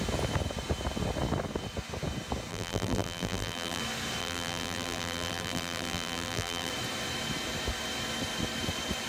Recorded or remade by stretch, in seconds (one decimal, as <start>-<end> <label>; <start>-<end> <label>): 0.0-2.5 recorded; 2.5-3.8 remade; 3.8-4.2 recorded; 4.2-6.7 remade; 6.7-9.1 recorded